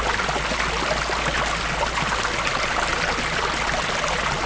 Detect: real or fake real